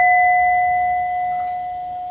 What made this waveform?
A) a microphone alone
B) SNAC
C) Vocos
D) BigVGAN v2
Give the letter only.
A